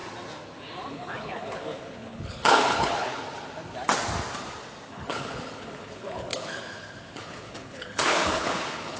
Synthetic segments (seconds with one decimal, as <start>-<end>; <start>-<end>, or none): 0.9-3.2; 4.9-9.0